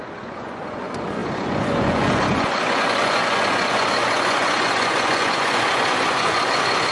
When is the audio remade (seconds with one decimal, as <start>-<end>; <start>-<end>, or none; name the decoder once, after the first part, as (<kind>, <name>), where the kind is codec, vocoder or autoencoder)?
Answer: 0.0-6.9 (vocoder, Vocos)

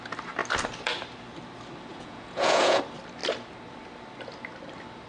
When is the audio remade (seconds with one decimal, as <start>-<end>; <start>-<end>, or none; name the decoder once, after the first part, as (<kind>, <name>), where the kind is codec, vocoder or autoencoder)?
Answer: 1.9-2.8 (vocoder, Vocos)

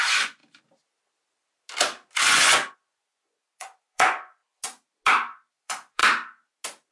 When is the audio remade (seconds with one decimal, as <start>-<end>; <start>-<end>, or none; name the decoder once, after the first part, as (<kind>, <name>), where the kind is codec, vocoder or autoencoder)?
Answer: 0.0-0.4 (vocoder, Vocos); 2.2-4.4; 5.5-6.0

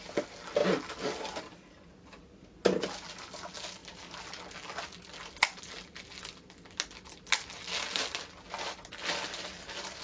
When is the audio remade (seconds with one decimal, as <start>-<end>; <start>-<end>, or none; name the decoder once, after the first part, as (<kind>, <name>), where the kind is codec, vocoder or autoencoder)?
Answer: none

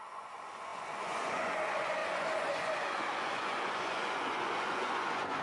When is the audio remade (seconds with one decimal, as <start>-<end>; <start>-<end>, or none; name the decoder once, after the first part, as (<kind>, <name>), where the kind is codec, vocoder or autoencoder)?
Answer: 0.0-5.4 (vocoder, Vocos)